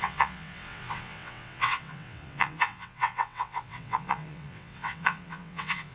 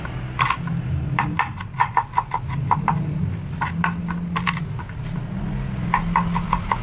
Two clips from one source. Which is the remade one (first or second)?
first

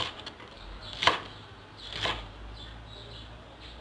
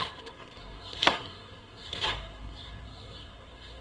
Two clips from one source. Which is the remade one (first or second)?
second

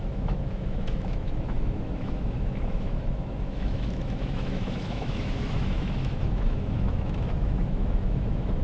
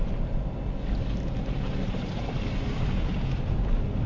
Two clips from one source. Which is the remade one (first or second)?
first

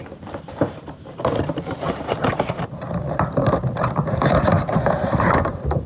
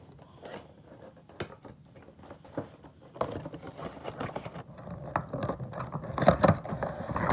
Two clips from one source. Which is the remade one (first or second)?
first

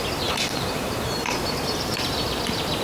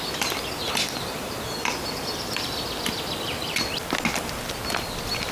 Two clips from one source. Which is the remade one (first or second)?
first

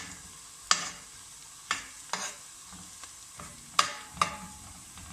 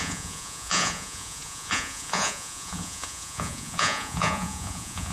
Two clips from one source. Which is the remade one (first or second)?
second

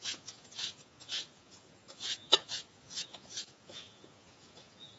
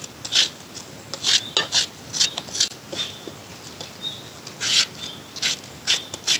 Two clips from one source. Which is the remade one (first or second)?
first